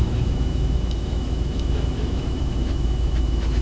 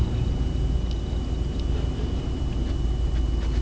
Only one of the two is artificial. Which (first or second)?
first